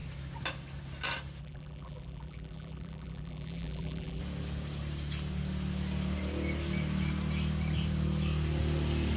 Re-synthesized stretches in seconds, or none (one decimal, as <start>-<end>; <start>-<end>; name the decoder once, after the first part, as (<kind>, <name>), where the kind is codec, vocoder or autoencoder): 1.4-4.2 (vocoder, BigVGAN v2)